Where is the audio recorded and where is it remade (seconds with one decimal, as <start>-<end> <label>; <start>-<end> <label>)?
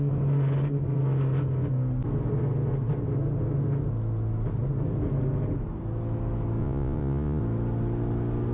0.0-6.6 recorded; 6.6-7.4 remade; 7.4-8.5 recorded